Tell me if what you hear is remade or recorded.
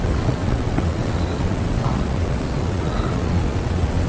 remade